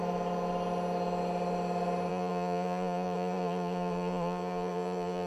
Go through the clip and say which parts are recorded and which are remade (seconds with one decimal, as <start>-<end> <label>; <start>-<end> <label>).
0.0-2.1 recorded; 2.1-5.3 remade